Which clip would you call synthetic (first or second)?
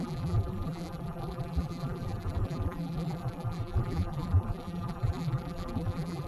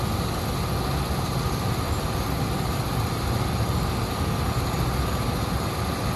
first